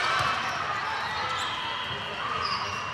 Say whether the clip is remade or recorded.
recorded